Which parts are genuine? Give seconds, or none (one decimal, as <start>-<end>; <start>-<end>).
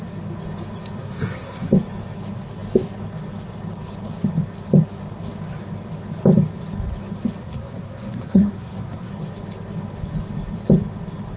0.0-1.0; 1.7-7.4; 9.1-11.4